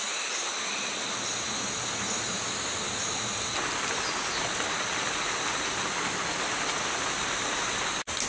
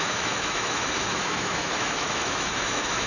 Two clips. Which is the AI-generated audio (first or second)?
second